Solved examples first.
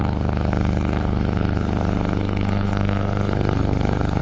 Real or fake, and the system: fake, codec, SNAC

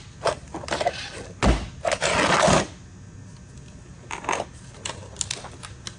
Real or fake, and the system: real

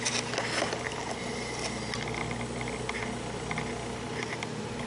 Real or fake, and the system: real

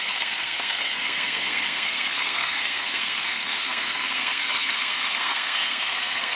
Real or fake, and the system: fake, codec, SNAC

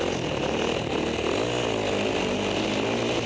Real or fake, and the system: real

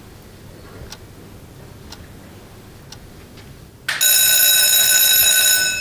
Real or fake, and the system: real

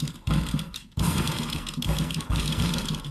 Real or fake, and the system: fake, codec, SNAC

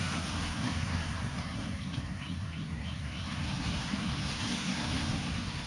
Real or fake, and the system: fake, codec, SNAC